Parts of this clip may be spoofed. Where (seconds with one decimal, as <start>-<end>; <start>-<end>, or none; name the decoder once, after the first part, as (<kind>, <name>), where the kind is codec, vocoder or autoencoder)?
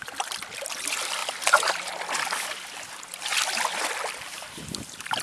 none